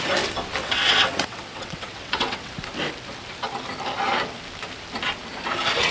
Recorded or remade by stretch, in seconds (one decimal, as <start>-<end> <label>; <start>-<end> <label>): 0.0-0.6 recorded; 0.6-2.5 remade; 2.5-5.9 recorded